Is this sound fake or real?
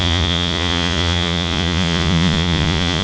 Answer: fake